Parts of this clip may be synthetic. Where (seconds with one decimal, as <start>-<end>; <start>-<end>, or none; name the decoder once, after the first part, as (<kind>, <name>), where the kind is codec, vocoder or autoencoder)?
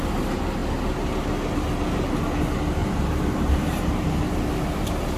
2.8-4.1 (vocoder, BigVGAN v2)